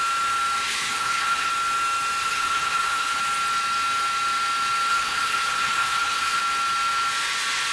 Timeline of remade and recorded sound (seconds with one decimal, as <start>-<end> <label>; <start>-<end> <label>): 0.0-0.7 recorded; 0.7-1.5 remade; 1.5-2.2 recorded; 2.2-3.2 remade; 3.2-4.9 recorded; 4.9-6.4 remade; 6.4-7.7 recorded